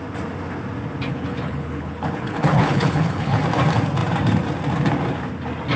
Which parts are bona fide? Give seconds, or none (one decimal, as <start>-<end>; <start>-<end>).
0.0-1.1; 3.4-5.8

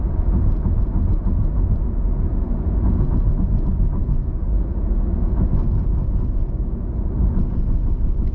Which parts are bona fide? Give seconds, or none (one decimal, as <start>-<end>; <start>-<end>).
none

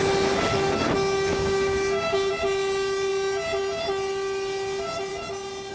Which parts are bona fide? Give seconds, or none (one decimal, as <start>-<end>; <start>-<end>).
0.0-1.3; 2.3-5.7

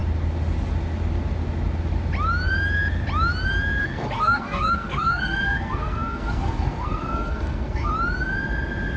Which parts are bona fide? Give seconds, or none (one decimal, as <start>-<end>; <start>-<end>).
0.0-3.8; 7.9-9.0

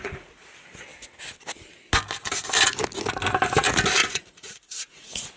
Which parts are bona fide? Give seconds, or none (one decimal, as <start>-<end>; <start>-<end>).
0.5-4.0

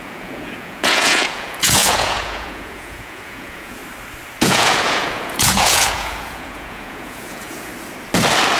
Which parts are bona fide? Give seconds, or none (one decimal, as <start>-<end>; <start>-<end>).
3.8-4.4; 7.7-8.6

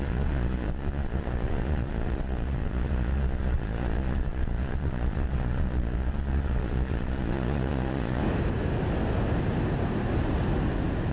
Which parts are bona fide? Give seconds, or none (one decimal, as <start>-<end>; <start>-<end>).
8.2-11.1

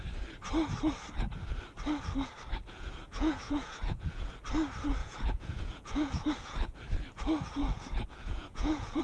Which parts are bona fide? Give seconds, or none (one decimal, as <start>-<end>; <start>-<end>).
0.0-2.6; 4.3-5.0; 6.8-7.6